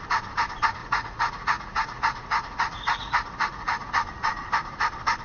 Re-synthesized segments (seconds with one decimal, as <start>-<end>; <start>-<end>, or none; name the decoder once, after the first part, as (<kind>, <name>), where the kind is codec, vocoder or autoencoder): 0.8-3.9 (vocoder, Vocos)